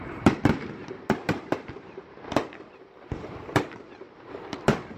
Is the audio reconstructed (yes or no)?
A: yes